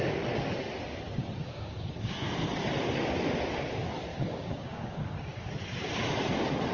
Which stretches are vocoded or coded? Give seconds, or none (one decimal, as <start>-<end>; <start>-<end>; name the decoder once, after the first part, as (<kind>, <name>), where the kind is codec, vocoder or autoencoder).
1.4-2.3 (codec, DAC); 4.1-5.5